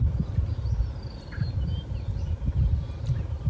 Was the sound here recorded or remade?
recorded